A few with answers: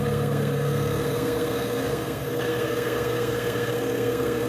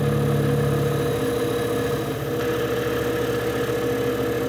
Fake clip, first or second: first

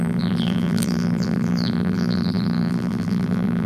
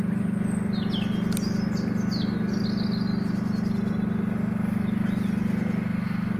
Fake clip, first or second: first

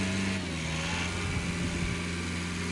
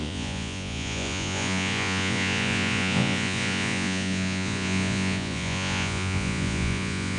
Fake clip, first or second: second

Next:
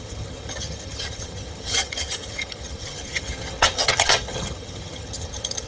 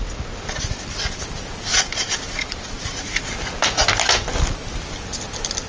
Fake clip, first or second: first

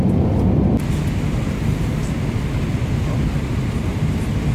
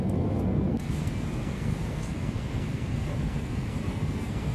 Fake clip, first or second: second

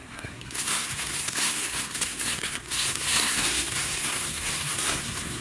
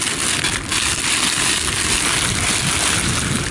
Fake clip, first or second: first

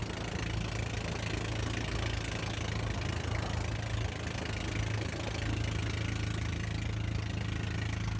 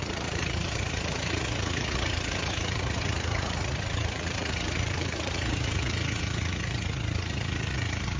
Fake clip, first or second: second